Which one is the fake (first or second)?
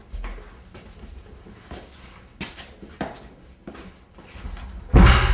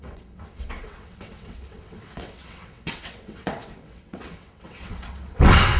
second